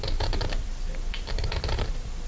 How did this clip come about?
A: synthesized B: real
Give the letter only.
A